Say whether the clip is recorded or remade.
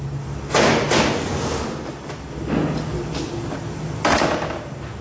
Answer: recorded